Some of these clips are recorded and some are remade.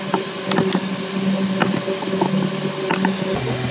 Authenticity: recorded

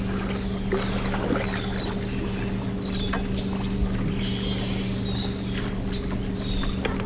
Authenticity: recorded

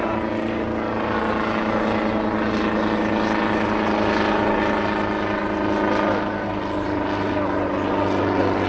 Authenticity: recorded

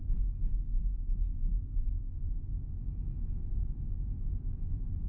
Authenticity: recorded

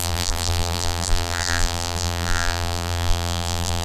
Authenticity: remade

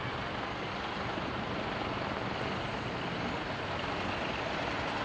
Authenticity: recorded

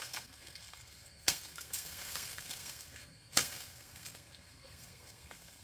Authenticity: remade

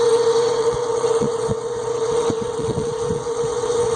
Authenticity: remade